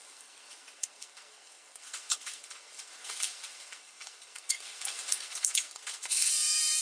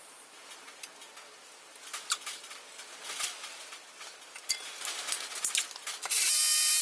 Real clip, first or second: second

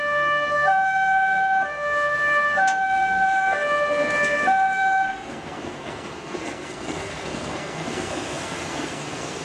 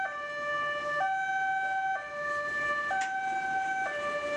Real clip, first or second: second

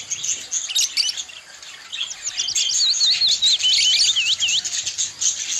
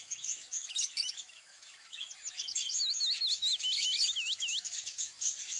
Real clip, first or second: first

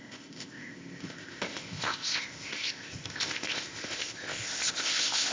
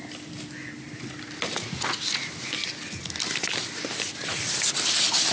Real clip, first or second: second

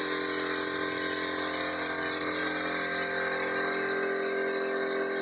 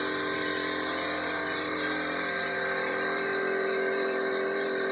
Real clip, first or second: first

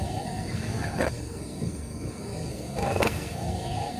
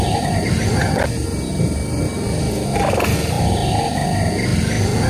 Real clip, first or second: second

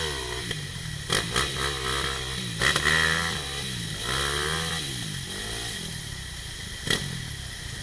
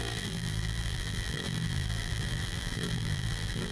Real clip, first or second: first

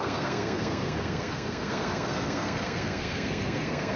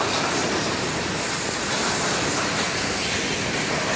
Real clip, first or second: second